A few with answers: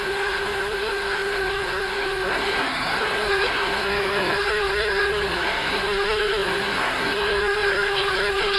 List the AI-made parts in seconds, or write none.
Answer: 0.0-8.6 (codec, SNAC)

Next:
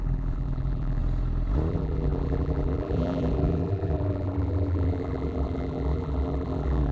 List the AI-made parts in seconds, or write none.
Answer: 0.0-1.0 (vocoder, BigVGAN v2); 1.7-6.9

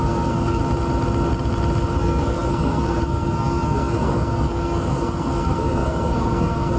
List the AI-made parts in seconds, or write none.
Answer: 0.0-0.6 (codec, SNAC); 2.0-6.8

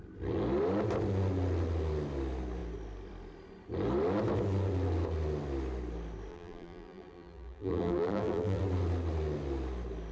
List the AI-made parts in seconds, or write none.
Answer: 6.3-8.6 (vocoder, BigVGAN v2)

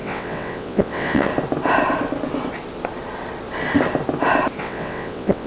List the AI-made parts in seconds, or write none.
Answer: 0.0-1.3 (vocoder, WaveNeXt); 4.6-5.5

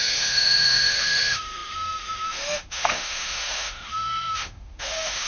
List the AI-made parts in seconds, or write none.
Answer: 0.0-5.3 (autoencoder, DAC-VAE)

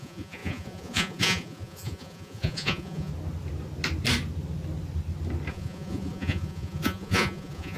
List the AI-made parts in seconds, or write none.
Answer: 0.0-3.1 (vocoder, Vocos); 5.5-7.8